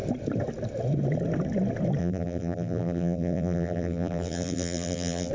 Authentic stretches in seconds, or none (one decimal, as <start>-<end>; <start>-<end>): 0.0-2.0